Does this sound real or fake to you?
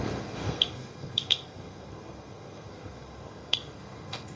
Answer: fake